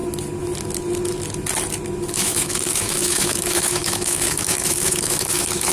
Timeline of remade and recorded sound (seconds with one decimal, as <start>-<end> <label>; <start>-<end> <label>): 0.0-2.1 recorded; 2.1-5.7 remade